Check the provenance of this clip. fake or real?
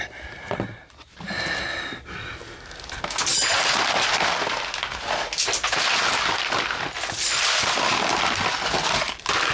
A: real